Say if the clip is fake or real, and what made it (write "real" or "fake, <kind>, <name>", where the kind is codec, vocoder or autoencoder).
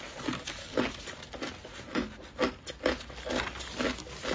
real